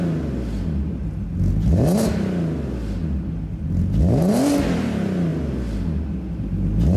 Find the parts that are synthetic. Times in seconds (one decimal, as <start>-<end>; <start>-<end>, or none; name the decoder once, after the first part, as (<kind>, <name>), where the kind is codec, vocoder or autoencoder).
none

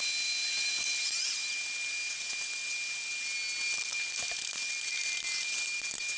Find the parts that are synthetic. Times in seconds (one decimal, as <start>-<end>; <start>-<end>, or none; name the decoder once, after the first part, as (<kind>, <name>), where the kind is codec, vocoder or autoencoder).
none

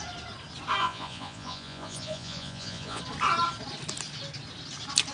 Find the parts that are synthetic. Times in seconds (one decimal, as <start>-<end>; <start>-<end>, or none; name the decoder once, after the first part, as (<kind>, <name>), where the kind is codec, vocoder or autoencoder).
0.8-3.0 (vocoder, Vocos)

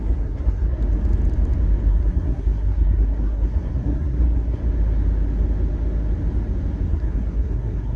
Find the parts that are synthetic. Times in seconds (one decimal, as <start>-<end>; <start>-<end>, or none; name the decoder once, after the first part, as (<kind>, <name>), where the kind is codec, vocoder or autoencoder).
0.0-0.8 (codec, SNAC); 1.9-4.6; 6.8-8.0

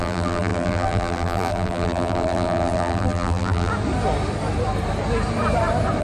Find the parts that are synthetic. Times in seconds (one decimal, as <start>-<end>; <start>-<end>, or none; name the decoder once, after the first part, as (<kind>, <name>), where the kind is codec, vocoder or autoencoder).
0.0-3.7 (vocoder, BigVGAN v2)

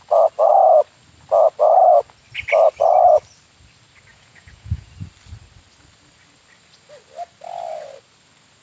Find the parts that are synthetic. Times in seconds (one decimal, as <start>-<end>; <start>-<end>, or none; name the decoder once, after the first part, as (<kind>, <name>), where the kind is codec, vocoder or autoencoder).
4.1-4.9 (vocoder, Vocos)

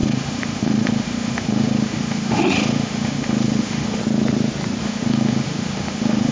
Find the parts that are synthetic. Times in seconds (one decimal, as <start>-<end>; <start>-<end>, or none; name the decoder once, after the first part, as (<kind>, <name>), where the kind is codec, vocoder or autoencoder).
0.0-4.0 (autoencoder, DAC-VAE); 4.8-6.3